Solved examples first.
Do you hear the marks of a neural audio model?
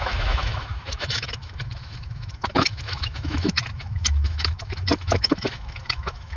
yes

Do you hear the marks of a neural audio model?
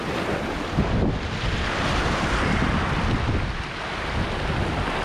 no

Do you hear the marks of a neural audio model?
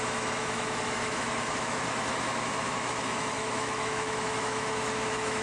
yes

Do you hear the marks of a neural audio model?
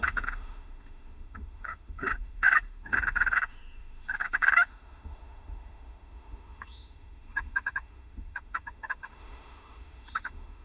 yes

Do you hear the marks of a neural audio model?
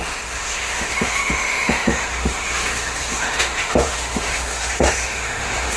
yes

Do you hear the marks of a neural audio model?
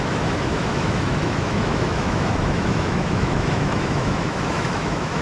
yes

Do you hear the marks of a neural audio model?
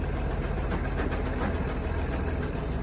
no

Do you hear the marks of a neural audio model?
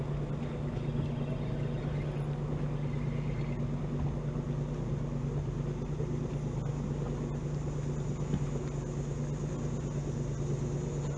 no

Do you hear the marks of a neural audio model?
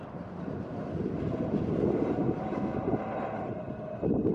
no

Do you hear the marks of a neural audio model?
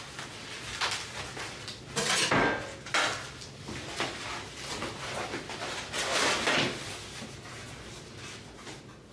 no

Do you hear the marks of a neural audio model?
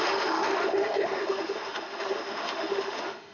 yes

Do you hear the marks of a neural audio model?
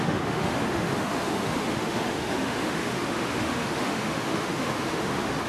yes